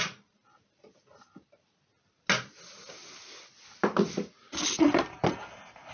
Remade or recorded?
recorded